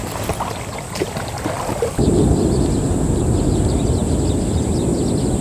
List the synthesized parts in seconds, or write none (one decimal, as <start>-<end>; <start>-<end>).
none

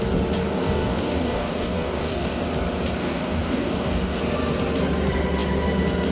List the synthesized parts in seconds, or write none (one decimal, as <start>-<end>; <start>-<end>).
0.4-2.4; 3.0-4.2

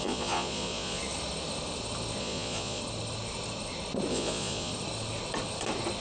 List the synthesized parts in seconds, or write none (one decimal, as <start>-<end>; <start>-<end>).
0.0-1.0; 2.2-2.8; 4.1-4.7

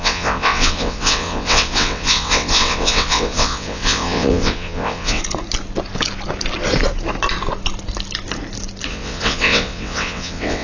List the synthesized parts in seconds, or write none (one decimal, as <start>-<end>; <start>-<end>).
0.0-5.2; 8.9-10.6

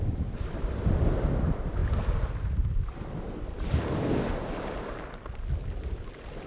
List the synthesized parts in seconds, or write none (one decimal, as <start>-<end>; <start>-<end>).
none

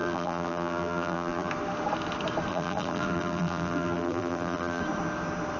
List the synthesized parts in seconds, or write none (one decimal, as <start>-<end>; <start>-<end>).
0.0-1.5; 2.5-4.8

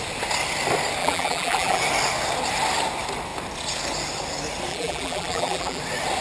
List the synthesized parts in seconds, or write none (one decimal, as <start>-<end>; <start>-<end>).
1.0-1.8; 4.7-5.8